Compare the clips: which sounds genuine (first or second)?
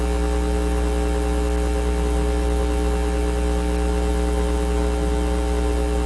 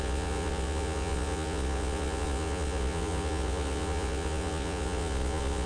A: first